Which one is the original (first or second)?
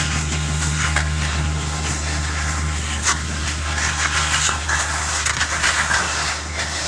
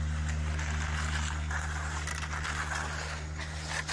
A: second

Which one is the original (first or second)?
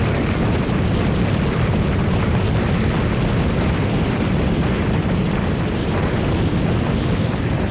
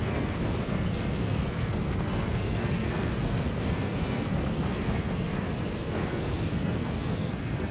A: first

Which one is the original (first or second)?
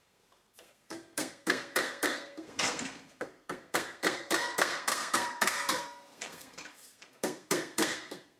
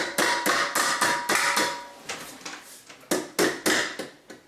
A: second